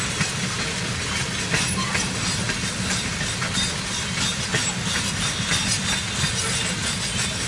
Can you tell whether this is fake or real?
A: real